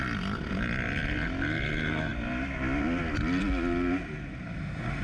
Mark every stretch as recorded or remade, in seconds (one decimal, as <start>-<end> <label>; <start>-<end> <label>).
0.0-5.0 recorded